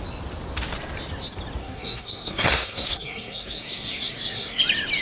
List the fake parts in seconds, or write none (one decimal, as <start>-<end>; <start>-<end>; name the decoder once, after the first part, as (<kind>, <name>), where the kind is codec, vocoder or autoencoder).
1.6-4.6 (codec, SNAC)